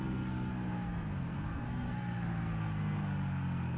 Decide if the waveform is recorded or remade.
remade